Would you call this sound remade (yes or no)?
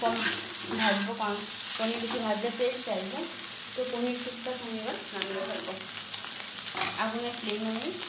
no